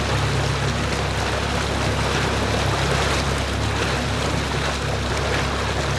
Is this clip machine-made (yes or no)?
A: no